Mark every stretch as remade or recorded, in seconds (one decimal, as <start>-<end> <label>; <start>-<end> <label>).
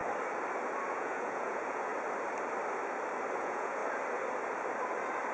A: 0.0-0.9 recorded; 0.9-1.9 remade; 1.9-3.4 recorded; 3.4-3.8 remade; 3.8-5.3 recorded